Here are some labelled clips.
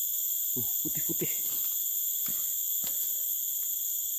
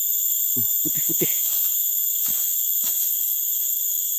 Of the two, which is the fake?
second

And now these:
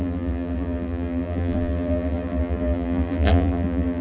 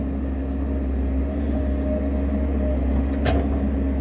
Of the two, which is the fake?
first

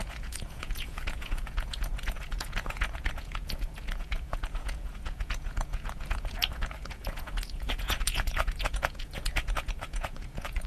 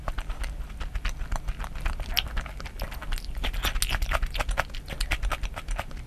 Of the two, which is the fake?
first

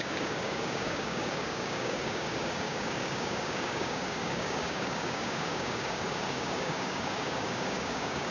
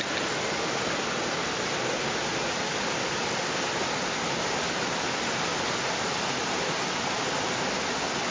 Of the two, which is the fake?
first